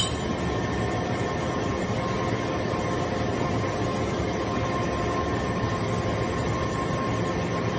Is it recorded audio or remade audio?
recorded